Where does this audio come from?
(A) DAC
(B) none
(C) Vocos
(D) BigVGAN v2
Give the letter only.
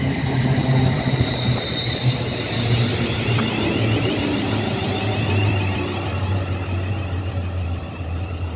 D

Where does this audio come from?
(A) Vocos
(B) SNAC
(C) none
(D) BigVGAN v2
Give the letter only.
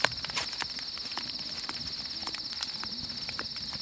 C